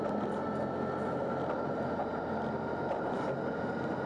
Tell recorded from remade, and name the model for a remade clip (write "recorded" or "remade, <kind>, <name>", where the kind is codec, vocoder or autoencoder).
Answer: recorded